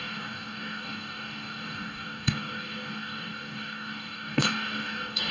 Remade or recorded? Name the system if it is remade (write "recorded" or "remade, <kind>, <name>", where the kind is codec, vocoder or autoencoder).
remade, codec, DAC